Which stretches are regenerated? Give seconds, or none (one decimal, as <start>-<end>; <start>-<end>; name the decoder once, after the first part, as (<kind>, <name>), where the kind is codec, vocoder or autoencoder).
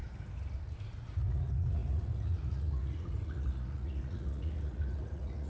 0.6-5.5 (vocoder, Vocos)